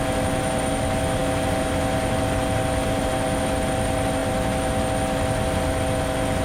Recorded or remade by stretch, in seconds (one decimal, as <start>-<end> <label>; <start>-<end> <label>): 0.0-6.4 recorded